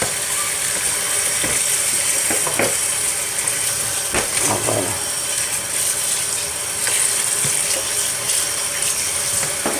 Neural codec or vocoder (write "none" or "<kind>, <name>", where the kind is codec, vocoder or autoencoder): none